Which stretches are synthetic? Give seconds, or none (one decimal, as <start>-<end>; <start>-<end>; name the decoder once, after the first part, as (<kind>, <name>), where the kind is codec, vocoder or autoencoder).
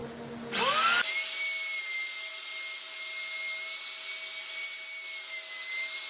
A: none